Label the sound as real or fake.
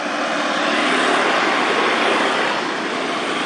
real